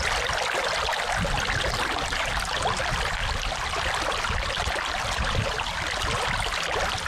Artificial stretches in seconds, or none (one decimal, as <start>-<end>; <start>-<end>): none